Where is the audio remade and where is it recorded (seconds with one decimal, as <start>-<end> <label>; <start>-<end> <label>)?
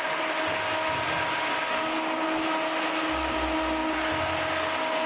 0.0-5.1 recorded